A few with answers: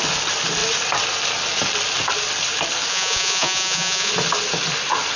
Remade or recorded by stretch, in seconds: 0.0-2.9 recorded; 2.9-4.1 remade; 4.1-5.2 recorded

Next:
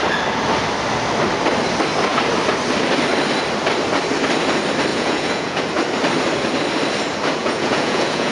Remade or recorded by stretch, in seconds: 0.0-4.9 recorded; 4.9-5.6 remade; 5.6-7.4 recorded; 7.4-8.3 remade

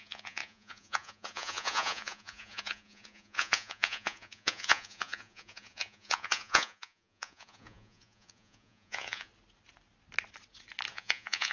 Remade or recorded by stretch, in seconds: 0.0-9.3 remade; 9.3-10.9 recorded; 10.9-11.5 remade

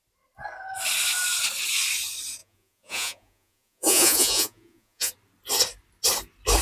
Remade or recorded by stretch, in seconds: 0.0-2.4 recorded; 2.4-5.1 remade; 5.1-6.6 recorded

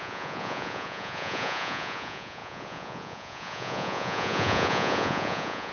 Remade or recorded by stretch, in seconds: 0.0-5.7 remade